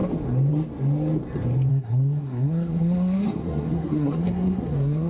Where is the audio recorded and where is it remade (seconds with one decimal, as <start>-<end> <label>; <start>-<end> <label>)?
0.0-1.7 recorded; 1.7-5.1 remade